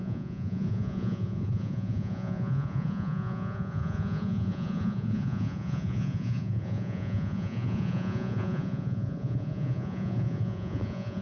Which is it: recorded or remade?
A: remade